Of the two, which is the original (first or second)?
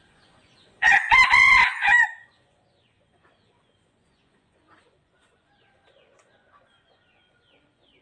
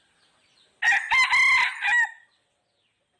second